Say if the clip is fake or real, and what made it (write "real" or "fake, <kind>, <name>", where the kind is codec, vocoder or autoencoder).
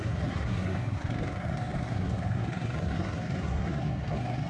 fake, codec, SNAC